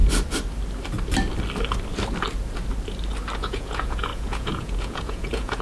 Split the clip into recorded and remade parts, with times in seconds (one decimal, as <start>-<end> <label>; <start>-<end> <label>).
0.0-3.4 recorded; 3.4-5.6 remade